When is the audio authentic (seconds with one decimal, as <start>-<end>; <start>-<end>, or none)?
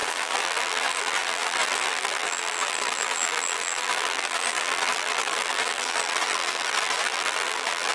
none